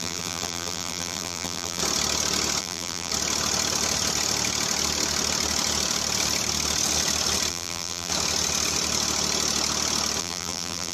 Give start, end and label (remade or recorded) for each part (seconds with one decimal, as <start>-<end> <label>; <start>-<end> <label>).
0.0-1.8 remade; 1.8-2.6 recorded; 2.6-3.1 remade; 3.1-7.5 recorded; 7.5-8.1 remade; 8.1-10.2 recorded; 10.2-10.9 remade